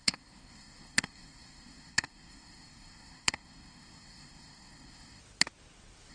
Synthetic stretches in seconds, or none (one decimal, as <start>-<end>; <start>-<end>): 0.0-5.2